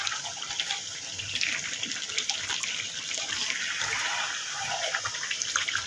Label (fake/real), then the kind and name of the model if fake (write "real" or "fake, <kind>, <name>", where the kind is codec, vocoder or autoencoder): real